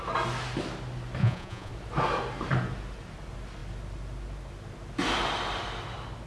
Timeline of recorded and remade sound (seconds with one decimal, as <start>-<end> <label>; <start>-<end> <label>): 0.0-1.2 recorded; 1.2-1.7 remade; 1.7-6.3 recorded